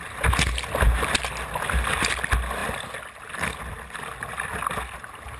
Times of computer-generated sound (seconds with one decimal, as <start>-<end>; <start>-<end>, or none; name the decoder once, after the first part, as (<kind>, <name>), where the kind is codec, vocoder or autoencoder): none